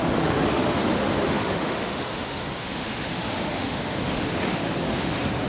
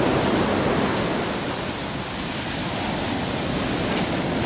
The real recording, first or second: second